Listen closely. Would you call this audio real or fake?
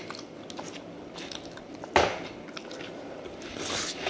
real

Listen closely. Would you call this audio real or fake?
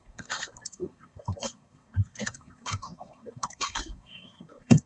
fake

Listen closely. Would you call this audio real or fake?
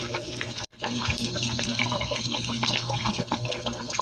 fake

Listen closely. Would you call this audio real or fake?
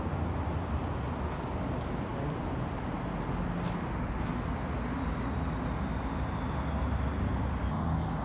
real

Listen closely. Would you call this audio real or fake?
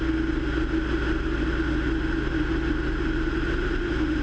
real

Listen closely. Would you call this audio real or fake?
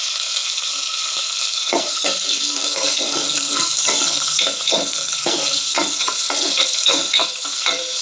fake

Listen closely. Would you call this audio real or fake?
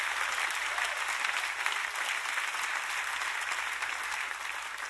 real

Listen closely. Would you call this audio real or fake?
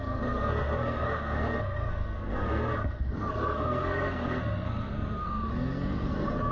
fake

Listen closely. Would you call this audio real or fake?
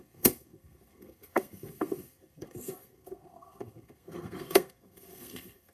fake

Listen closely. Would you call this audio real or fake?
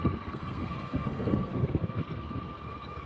fake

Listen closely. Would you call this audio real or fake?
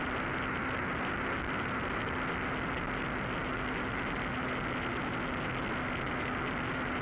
real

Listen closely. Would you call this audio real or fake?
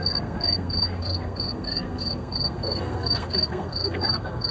fake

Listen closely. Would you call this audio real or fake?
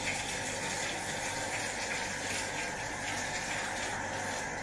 real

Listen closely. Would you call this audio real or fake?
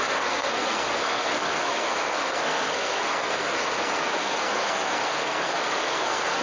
fake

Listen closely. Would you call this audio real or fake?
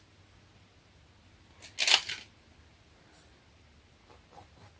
real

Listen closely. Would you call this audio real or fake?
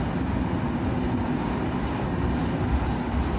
real